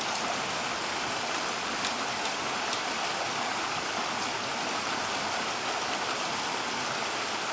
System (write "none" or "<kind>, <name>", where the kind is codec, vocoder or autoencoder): none